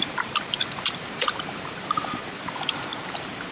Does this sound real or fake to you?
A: fake